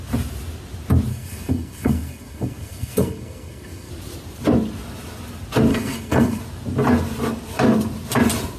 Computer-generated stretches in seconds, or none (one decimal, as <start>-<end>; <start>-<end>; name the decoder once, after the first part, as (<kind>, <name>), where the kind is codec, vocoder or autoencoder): 1.1-3.9 (codec, SNAC); 5.7-6.4